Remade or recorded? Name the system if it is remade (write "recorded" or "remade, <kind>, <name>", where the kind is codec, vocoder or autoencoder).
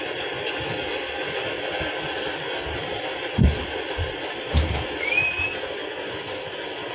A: recorded